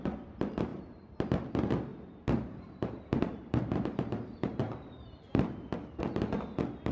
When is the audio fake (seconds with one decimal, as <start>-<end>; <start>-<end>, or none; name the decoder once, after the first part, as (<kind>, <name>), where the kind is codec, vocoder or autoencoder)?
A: 0.7-1.3 (vocoder, BigVGAN v2); 1.9-6.0